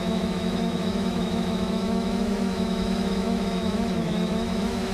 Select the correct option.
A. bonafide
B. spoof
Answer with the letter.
B